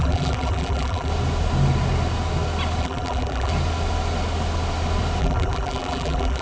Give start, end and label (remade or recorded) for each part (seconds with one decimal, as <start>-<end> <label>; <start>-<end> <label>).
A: 0.0-1.1 remade; 1.1-2.8 recorded; 2.8-3.5 remade; 3.5-5.2 recorded; 5.2-6.4 remade